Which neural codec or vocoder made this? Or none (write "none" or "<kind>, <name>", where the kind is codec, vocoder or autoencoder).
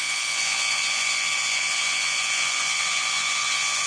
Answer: vocoder, Vocos